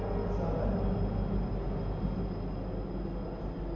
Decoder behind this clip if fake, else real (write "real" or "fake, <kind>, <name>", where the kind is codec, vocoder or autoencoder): real